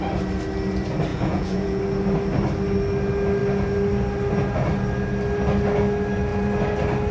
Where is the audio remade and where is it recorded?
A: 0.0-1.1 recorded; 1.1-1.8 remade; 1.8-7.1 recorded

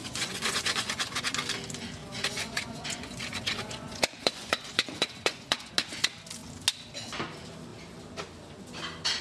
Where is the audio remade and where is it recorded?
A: 0.0-1.3 remade; 1.3-2.0 recorded; 2.0-5.7 remade; 5.7-9.2 recorded

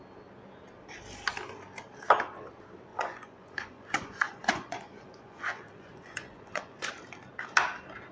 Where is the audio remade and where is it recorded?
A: 0.0-2.9 recorded; 2.9-6.9 remade; 6.9-8.1 recorded

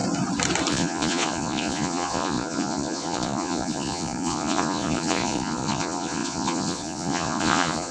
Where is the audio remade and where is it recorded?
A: 0.0-0.7 recorded; 0.7-7.9 remade

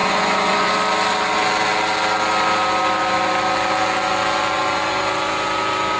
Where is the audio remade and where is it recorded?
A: 0.0-0.7 remade; 0.7-6.0 recorded

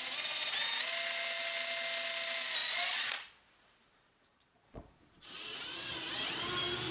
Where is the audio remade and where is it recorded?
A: 0.0-2.6 recorded; 2.6-3.4 remade; 3.4-4.3 recorded; 4.3-5.9 remade; 5.9-6.9 recorded